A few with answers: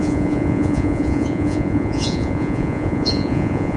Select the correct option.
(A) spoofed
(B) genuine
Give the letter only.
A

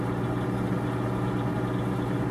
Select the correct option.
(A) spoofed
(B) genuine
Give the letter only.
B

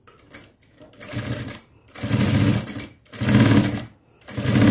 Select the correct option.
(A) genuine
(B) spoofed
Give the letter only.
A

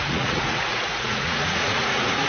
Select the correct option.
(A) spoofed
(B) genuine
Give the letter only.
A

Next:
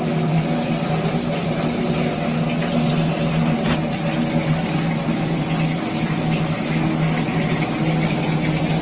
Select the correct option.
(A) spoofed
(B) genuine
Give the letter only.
B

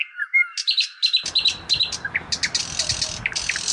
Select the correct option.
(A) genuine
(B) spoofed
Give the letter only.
A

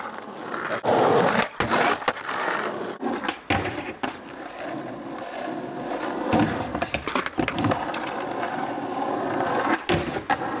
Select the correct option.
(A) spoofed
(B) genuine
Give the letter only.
B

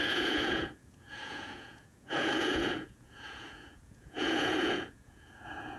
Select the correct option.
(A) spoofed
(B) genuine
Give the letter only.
A